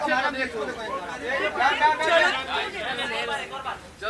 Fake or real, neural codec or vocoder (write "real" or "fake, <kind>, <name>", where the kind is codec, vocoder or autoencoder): real